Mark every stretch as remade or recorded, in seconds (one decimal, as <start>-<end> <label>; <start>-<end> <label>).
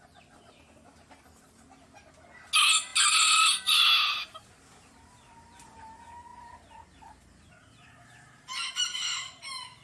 0.0-9.8 recorded